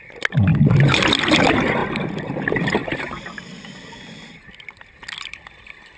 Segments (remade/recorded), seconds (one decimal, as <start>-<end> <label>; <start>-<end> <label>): 0.0-1.8 recorded; 1.8-2.4 remade; 2.4-2.8 recorded; 2.8-3.7 remade; 3.7-6.0 recorded